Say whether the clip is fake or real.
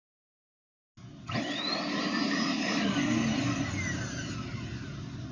real